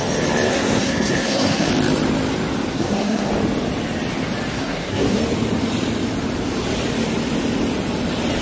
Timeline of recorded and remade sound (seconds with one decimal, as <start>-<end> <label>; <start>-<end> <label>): 0.0-0.5 recorded; 0.5-1.7 remade; 1.7-2.7 recorded; 2.7-3.3 remade; 3.3-4.5 recorded; 4.5-5.2 remade; 5.2-8.4 recorded